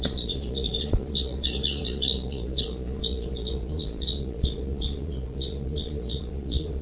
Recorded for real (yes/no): no